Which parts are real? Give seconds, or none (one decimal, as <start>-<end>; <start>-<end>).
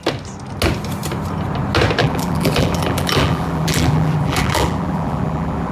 0.0-2.0